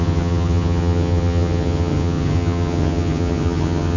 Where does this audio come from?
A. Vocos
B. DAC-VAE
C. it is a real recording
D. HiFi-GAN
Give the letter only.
D